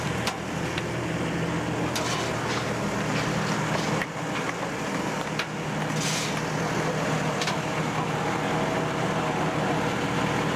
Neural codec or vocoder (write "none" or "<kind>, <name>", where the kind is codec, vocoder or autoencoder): none